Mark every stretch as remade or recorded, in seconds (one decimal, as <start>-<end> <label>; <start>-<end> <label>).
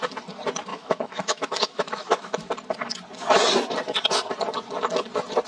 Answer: 0.0-0.7 recorded; 0.7-2.5 remade; 2.5-5.5 recorded